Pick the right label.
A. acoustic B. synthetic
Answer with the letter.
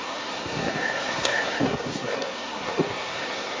B